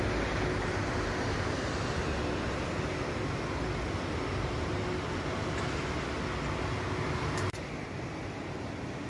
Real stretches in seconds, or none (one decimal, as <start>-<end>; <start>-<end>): 0.0-9.1